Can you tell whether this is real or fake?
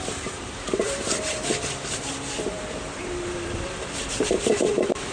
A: fake